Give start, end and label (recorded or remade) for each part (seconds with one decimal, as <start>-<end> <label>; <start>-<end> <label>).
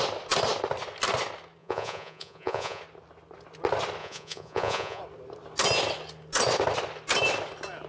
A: 0.0-1.6 recorded; 1.6-2.8 remade; 2.8-4.0 recorded; 4.0-5.0 remade; 5.0-7.9 recorded